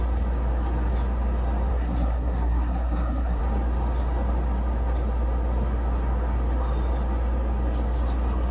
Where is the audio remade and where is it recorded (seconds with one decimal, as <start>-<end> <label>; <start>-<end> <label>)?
0.0-1.7 recorded; 1.7-3.4 remade; 3.4-8.5 recorded